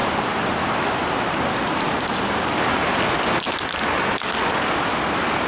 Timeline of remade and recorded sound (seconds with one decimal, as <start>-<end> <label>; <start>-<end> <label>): 0.0-5.5 recorded